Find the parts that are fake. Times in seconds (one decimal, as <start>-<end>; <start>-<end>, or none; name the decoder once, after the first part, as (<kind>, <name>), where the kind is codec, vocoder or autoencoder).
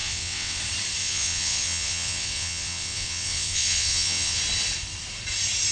0.0-0.6 (vocoder, WaveNeXt); 1.0-4.4